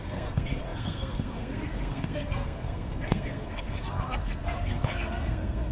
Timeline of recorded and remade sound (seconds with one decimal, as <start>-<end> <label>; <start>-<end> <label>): 0.0-5.7 remade